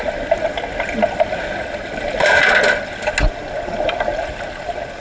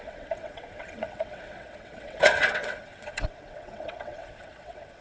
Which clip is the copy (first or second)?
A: second